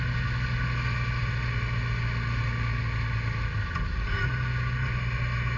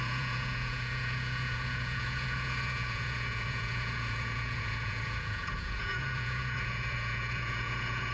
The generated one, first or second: second